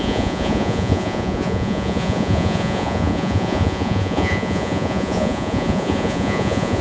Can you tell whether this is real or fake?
fake